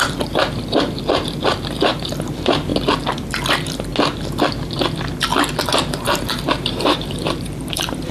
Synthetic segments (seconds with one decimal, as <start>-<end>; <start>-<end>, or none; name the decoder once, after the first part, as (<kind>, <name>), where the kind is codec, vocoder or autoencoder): 0.0-2.7 (vocoder, BigVGAN v2); 3.5-3.9; 5.9-8.1